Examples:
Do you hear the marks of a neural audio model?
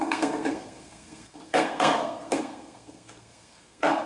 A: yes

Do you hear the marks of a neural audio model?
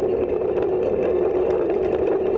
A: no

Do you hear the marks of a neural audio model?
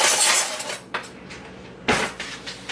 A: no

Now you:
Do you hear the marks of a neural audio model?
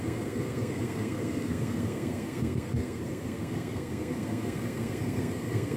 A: yes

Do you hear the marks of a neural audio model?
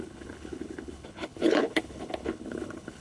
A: yes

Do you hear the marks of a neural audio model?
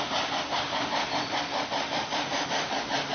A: no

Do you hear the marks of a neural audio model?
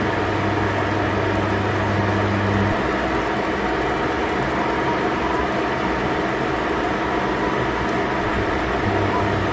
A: no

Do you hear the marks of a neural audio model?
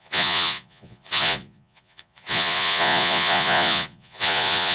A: yes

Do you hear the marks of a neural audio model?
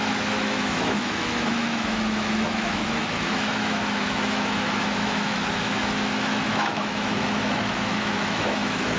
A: yes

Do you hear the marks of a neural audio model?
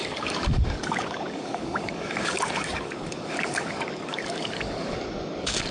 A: yes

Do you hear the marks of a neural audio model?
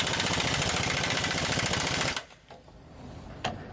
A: no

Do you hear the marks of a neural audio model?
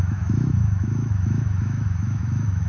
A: yes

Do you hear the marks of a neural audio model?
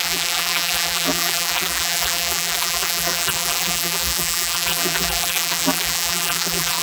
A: yes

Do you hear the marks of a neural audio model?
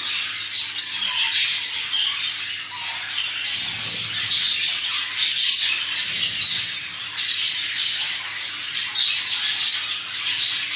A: no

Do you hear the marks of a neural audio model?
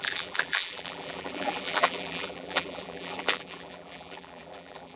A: yes